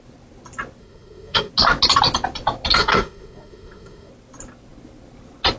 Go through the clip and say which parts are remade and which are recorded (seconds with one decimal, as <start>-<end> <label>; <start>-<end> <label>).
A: 0.0-0.8 recorded; 0.8-1.5 remade; 1.5-2.8 recorded; 2.8-4.1 remade; 4.1-5.6 recorded